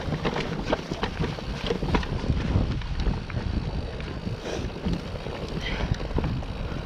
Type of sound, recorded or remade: recorded